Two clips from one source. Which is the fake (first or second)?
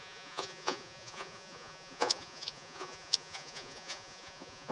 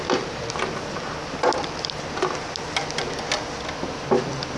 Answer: first